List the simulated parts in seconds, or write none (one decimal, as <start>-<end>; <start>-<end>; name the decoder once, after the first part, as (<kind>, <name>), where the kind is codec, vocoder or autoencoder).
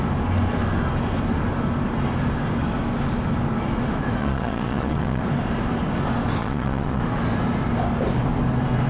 4.2-5.2 (vocoder, Vocos); 6.4-7.0